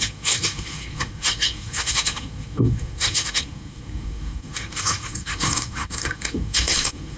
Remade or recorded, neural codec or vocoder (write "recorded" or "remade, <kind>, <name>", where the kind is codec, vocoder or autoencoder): remade, codec, SNAC